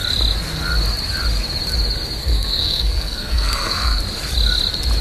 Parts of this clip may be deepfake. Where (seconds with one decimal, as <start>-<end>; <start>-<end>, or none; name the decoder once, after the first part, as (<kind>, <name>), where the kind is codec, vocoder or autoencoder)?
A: 2.2-4.0 (codec, SNAC)